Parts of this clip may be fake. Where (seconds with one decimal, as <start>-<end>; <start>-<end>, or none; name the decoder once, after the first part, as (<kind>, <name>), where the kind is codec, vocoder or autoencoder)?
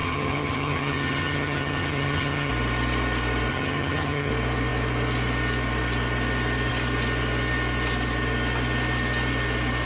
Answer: 0.0-2.5 (vocoder, HiFi-GAN); 3.5-4.3